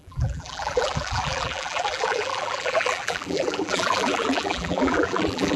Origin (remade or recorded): remade